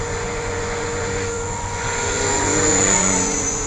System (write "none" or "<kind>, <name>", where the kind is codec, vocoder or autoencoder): vocoder, Vocos